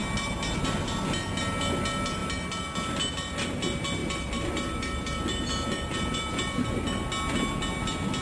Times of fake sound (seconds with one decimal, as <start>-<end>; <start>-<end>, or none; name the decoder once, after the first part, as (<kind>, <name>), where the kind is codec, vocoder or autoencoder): 4.0-6.7 (vocoder, BigVGAN v2)